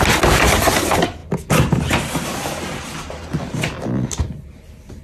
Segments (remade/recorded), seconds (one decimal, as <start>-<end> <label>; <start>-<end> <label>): 0.0-5.0 recorded